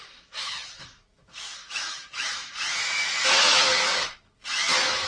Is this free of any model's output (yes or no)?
no